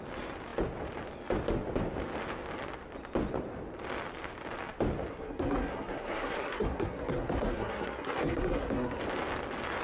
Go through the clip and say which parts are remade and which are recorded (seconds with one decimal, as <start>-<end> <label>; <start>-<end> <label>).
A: 0.0-5.1 recorded; 5.1-9.0 remade; 9.0-9.8 recorded